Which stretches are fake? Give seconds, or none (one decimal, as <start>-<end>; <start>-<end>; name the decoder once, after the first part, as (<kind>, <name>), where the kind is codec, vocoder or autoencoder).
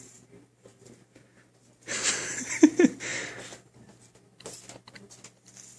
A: none